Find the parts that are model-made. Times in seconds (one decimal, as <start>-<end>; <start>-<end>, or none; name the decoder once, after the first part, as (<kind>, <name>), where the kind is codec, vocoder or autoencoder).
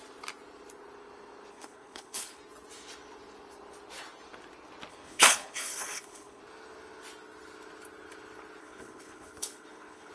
1.5-2.4 (codec, HILCodec); 4.9-6.4; 8.6-10.1